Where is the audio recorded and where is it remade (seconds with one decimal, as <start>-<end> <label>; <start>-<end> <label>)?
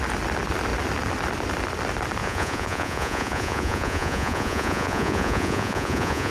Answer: 0.0-2.2 recorded; 2.2-6.3 remade